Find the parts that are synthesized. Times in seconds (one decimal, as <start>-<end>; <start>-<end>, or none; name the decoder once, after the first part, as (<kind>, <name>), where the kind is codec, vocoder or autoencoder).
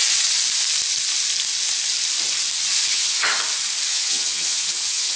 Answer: 2.9-3.3 (vocoder, HiFi-GAN); 3.9-5.2